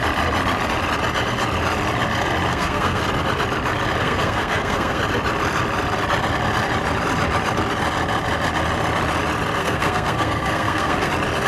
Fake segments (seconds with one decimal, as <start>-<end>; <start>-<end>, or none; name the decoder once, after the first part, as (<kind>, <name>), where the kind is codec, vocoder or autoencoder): 2.5-3.0 (codec, SNAC); 4.0-5.0; 9.6-11.1